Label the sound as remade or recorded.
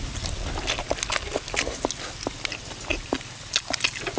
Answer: recorded